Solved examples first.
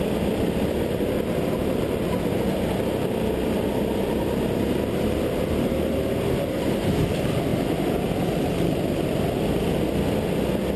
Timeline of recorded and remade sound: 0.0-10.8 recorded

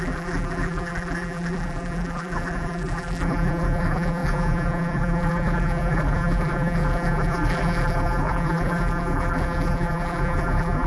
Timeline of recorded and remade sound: 0.0-10.9 remade